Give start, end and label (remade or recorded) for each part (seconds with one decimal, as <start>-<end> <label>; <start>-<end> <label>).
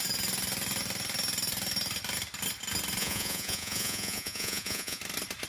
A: 0.0-3.0 recorded; 3.0-5.0 remade; 5.0-5.5 recorded